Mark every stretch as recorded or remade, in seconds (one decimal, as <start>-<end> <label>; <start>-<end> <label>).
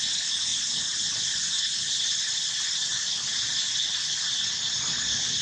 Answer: 0.0-5.4 recorded